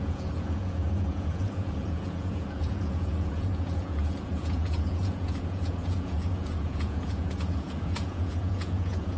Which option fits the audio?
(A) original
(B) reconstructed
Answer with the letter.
B